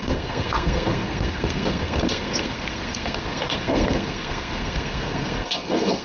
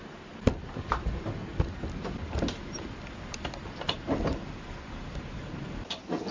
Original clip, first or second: second